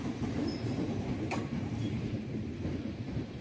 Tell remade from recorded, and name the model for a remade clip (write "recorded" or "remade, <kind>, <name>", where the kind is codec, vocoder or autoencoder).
remade, vocoder, BigVGAN v2